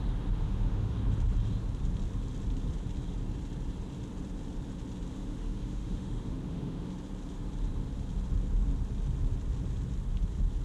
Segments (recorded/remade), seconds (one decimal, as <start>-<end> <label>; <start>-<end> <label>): 0.0-0.4 recorded; 0.4-0.9 remade; 0.9-5.1 recorded; 5.1-6.9 remade; 6.9-10.6 recorded